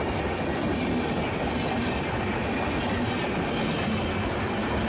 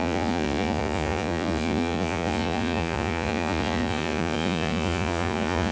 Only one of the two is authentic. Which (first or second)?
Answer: first